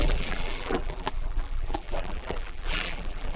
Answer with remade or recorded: remade